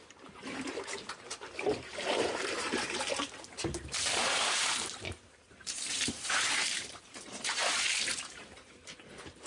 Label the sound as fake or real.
fake